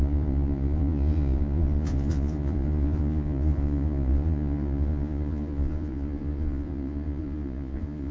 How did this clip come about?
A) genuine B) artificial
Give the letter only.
B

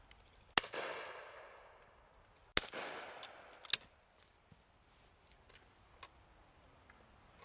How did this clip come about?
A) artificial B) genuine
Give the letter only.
B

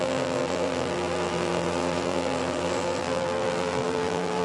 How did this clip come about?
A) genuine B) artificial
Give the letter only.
B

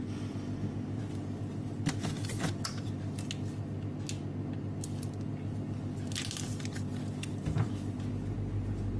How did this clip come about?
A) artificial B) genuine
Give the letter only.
B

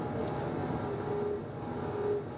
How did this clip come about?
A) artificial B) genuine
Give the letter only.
B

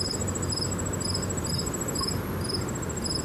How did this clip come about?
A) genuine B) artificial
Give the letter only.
A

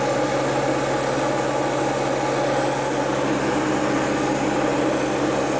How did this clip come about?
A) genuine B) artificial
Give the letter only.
A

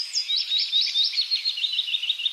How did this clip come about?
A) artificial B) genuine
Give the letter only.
B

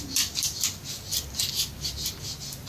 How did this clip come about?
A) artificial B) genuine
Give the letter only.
B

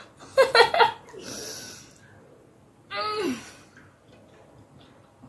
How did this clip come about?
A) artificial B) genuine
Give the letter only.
B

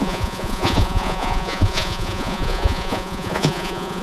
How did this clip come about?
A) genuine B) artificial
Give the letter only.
B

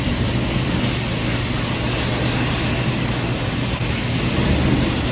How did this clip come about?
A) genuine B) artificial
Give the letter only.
A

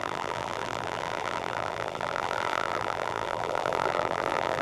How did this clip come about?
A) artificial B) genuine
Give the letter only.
A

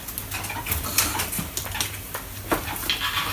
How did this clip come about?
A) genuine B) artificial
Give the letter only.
A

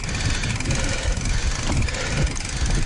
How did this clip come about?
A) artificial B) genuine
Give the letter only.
B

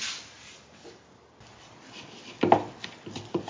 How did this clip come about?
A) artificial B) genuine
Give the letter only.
B